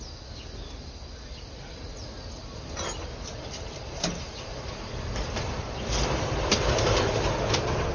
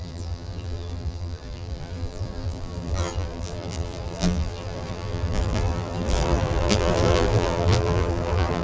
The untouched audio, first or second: first